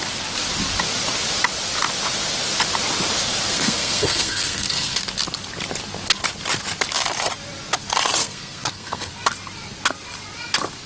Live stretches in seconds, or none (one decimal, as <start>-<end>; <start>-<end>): 0.0-3.5; 5.0-8.2; 9.1-10.9